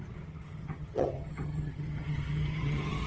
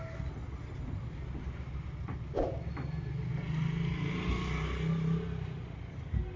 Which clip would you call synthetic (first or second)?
first